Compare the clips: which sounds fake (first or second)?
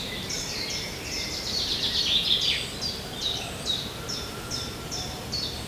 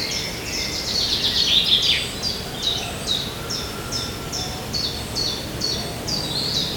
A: first